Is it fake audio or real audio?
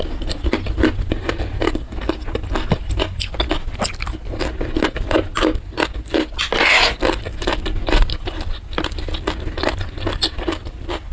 real